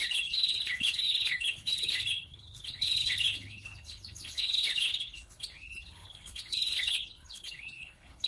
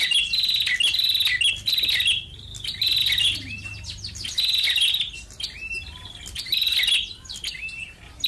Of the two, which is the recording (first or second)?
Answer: second